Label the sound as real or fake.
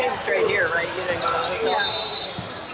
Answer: real